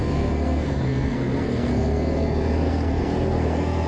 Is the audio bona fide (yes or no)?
no